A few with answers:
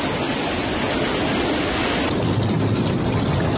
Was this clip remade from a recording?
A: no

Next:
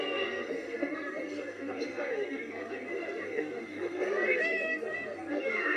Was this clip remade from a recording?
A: yes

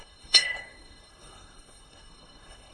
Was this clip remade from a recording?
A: yes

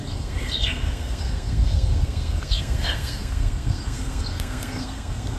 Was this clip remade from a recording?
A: yes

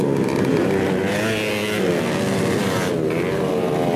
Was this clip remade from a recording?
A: no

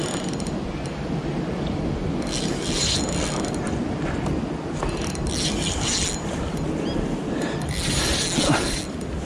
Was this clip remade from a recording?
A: no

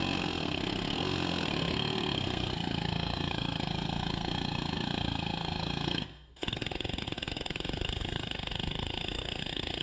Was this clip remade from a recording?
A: yes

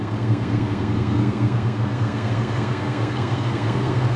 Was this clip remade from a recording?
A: yes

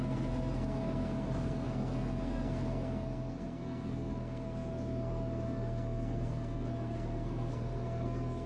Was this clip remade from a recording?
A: yes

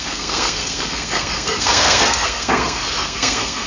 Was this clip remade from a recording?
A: yes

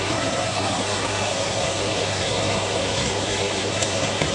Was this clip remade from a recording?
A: yes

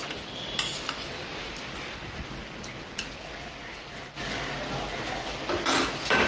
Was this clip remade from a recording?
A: no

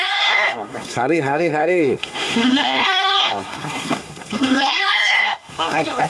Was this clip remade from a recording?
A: yes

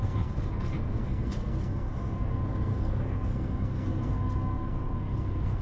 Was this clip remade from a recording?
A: yes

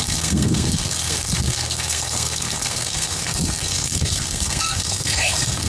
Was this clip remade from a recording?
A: yes